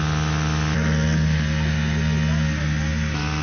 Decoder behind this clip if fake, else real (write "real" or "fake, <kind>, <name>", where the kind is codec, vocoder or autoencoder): real